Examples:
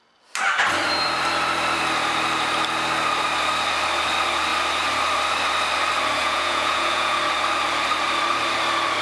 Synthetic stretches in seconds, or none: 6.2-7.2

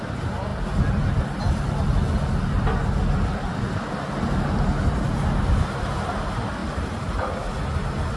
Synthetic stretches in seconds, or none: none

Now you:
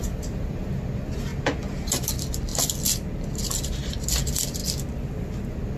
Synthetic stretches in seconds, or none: 0.0-0.8

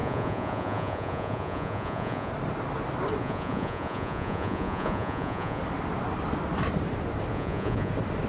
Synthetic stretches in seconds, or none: 0.0-2.3; 3.2-5.6; 7.3-7.9

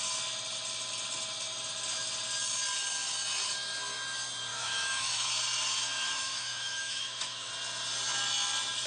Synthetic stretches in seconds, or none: 4.5-5.3; 6.0-7.5

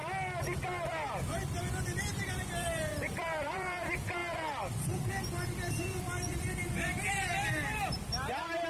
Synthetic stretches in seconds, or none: 1.6-4.2; 7.1-8.7

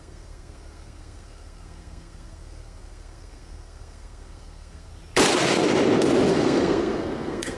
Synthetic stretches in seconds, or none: 0.0-4.9; 6.3-7.6